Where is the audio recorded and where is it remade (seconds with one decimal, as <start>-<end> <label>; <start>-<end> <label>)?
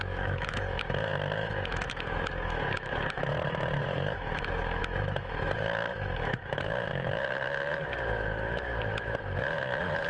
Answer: 0.0-10.1 remade